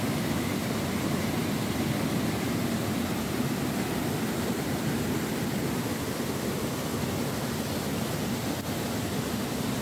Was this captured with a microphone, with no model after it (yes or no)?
yes